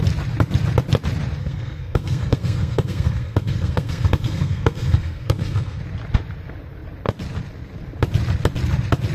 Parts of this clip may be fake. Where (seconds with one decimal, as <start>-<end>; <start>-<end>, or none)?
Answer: 1.4-5.8